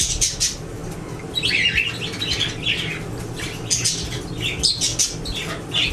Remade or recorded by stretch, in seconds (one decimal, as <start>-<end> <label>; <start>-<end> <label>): 0.0-5.9 recorded